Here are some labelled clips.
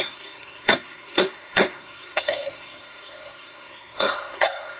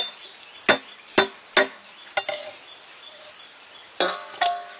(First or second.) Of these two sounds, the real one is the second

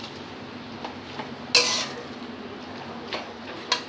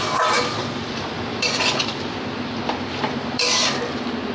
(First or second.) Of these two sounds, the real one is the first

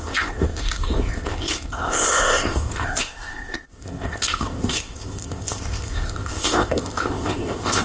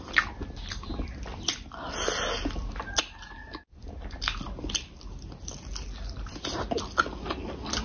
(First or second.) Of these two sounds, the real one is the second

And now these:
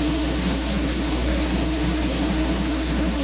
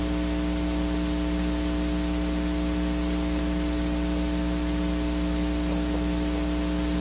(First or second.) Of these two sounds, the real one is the second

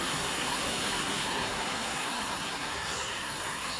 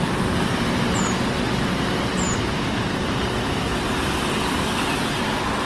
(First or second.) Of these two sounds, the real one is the second